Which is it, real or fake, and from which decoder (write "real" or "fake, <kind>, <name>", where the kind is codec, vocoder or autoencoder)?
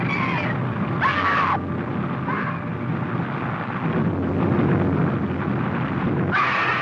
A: real